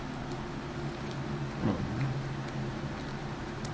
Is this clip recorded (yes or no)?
yes